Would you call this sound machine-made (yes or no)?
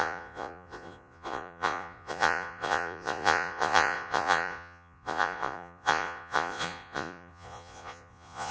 yes